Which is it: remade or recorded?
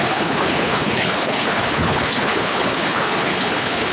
remade